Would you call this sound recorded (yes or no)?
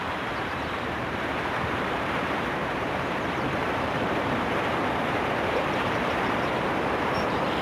no